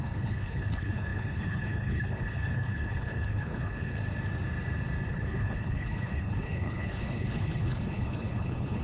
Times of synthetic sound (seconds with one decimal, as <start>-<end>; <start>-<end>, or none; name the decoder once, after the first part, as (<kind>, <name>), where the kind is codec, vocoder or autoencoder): 0.0-4.0 (codec, HILCodec); 5.1-8.8